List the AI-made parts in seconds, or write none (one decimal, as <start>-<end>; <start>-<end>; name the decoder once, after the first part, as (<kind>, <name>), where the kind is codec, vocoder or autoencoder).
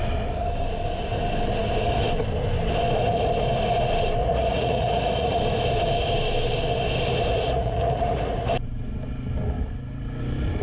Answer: 4.2-5.4 (vocoder, Vocos); 7.3-8.5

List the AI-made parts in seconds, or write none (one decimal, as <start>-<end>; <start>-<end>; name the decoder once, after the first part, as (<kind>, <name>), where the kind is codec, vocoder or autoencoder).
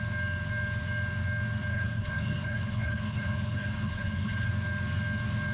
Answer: 1.7-4.5 (codec, HILCodec)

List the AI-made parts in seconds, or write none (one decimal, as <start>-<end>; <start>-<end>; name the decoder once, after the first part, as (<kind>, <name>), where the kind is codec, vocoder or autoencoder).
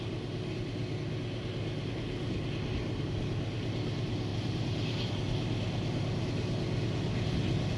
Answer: 4.3-5.1 (vocoder, BigVGAN v2)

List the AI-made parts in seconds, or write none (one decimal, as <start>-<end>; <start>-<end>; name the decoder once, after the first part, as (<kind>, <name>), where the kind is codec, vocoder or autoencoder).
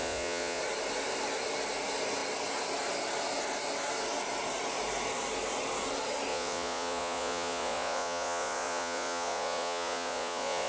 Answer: 0.0-0.6 (vocoder, Vocos); 6.3-10.7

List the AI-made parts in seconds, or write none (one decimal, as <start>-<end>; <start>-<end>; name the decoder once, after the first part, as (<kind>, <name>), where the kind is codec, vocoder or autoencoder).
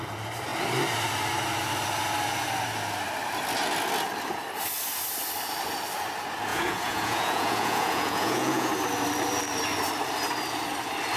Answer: 6.5-8.7 (vocoder, Vocos)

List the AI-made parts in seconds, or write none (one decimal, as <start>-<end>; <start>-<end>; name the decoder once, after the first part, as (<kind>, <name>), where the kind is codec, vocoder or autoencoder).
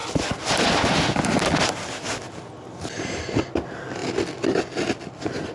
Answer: none